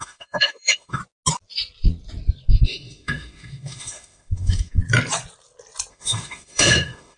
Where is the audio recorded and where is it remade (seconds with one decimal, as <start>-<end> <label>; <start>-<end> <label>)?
0.0-1.0 remade; 1.0-2.5 recorded; 2.5-4.8 remade; 4.8-5.9 recorded; 5.9-7.2 remade